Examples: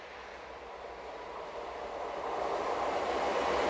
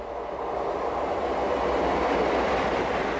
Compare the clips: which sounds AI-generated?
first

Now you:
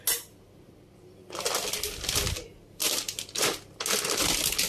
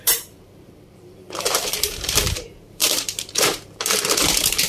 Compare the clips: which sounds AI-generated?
second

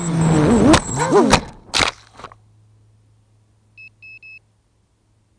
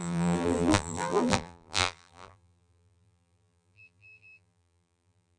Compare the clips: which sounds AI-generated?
second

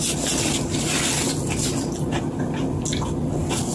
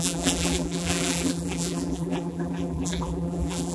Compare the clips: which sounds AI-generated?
second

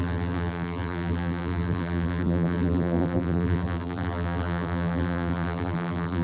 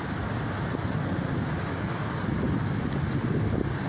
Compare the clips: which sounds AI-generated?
first